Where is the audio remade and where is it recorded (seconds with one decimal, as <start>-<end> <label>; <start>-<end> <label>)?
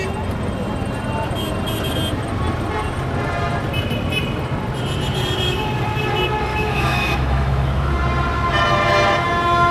0.0-6.5 recorded; 6.5-7.9 remade; 7.9-9.7 recorded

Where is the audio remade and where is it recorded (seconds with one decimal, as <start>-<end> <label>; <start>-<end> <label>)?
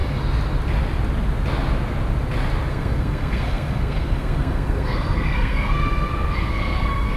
0.0-2.7 recorded; 2.7-7.2 remade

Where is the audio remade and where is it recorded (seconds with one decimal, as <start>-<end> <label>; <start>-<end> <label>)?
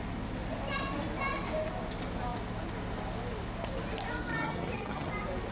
0.0-4.3 recorded; 4.3-5.1 remade; 5.1-5.5 recorded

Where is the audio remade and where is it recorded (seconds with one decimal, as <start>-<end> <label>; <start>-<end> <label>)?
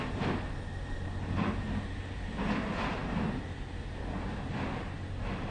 0.0-5.5 recorded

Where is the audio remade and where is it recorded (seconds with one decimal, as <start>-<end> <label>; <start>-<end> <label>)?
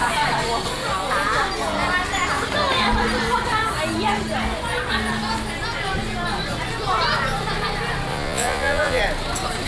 0.0-8.1 recorded; 8.1-9.0 remade; 9.0-9.7 recorded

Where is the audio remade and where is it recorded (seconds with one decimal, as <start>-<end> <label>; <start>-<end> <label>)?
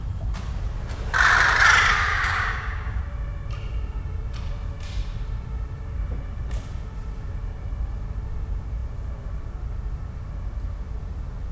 0.0-2.1 recorded; 2.1-3.0 remade; 3.0-11.5 recorded